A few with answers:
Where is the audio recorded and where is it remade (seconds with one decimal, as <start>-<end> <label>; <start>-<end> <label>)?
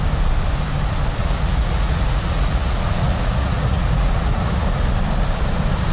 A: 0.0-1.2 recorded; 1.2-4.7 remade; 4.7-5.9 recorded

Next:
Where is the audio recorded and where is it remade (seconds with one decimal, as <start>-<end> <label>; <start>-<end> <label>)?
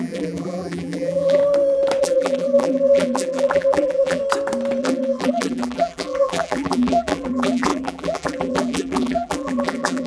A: 0.0-1.4 remade; 1.4-2.0 recorded; 2.0-4.2 remade; 4.2-4.8 recorded; 4.8-10.1 remade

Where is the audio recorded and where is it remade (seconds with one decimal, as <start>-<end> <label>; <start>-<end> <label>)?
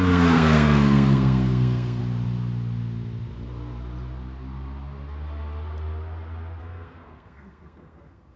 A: 0.0-2.0 remade; 2.0-6.6 recorded; 6.6-8.4 remade